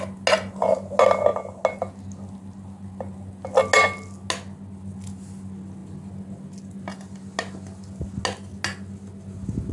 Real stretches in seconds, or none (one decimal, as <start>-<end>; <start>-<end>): 0.0-9.7